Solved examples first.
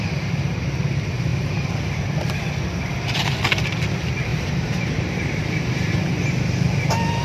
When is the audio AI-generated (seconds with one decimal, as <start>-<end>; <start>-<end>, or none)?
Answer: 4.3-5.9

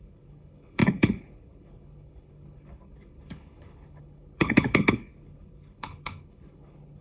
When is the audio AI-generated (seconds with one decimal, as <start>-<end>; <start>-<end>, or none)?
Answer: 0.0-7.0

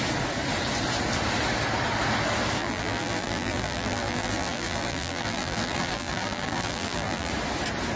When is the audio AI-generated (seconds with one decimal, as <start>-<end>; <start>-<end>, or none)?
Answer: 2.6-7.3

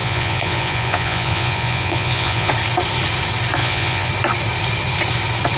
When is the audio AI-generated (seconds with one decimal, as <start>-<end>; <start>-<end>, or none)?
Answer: 0.0-2.5; 3.6-4.1

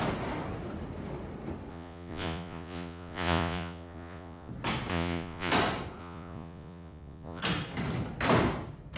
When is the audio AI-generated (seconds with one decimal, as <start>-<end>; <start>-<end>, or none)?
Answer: 1.7-4.5; 4.9-5.5; 6.0-7.4